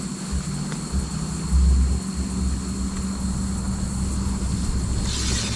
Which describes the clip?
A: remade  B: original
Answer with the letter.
B